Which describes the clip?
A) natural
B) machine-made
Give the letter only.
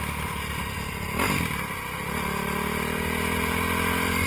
A